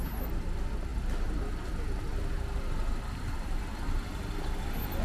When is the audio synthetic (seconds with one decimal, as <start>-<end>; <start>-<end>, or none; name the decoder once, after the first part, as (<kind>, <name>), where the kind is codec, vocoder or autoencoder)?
none